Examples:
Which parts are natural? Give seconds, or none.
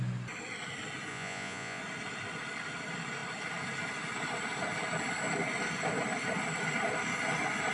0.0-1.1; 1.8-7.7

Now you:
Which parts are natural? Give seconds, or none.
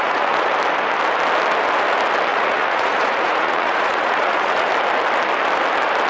0.5-2.3; 4.7-6.1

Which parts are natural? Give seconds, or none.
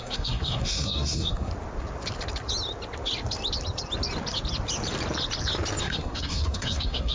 1.5-5.8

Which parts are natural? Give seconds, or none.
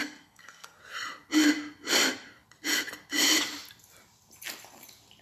0.8-5.2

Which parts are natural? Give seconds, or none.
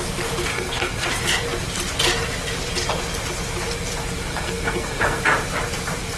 0.0-0.5; 1.1-4.3; 5.2-6.2